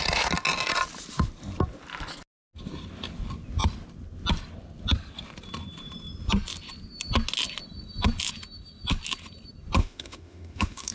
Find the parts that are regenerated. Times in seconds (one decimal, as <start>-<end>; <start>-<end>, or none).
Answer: 9.8-10.9